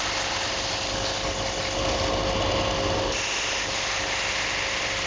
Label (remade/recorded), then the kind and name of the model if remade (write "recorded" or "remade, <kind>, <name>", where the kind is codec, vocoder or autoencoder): recorded